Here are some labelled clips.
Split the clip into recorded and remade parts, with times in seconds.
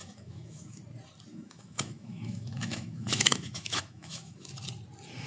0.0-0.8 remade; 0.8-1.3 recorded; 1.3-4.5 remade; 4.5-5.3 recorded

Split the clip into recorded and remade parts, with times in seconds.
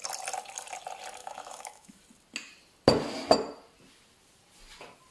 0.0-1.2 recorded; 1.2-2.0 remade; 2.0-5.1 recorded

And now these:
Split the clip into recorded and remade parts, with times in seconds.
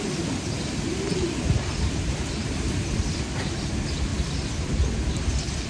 0.0-5.7 recorded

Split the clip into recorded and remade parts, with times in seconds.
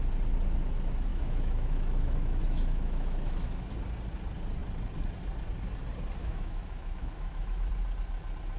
0.0-1.1 recorded; 1.1-3.7 remade; 3.7-6.2 recorded; 6.2-7.7 remade; 7.7-8.6 recorded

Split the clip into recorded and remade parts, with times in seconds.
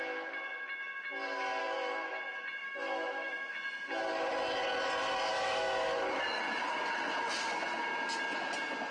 0.0-1.6 recorded; 1.6-2.2 remade; 2.2-2.6 recorded; 2.6-3.5 remade; 3.5-5.3 recorded; 5.3-6.0 remade; 6.0-8.9 recorded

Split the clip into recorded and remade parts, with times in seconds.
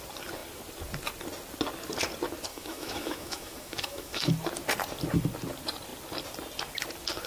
0.0-2.5 recorded; 2.5-4.3 remade; 4.3-7.3 recorded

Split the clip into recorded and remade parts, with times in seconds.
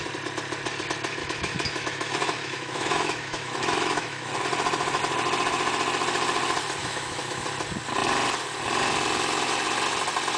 0.0-1.2 recorded; 1.2-4.3 remade; 4.3-6.8 recorded; 6.8-7.4 remade; 7.4-10.4 recorded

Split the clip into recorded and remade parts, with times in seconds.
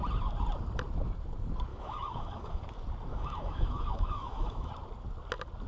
0.0-1.7 recorded; 1.7-2.6 remade; 2.6-3.1 recorded; 3.1-4.7 remade; 4.7-5.7 recorded